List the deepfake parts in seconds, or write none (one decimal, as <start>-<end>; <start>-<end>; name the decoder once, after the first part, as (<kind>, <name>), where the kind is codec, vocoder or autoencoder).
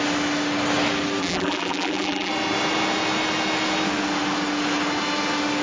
1.2-2.3 (vocoder, BigVGAN v2)